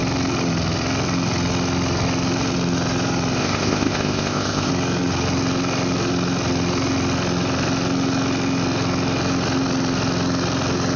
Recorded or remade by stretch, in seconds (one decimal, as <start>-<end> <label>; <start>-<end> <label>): 0.0-3.4 recorded; 3.4-4.7 remade; 4.7-11.0 recorded